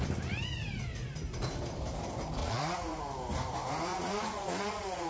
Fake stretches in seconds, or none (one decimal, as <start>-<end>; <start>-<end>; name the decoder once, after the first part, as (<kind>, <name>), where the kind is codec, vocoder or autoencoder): 2.4-3.0 (vocoder, Vocos); 3.9-5.1